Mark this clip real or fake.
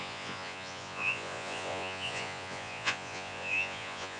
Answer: fake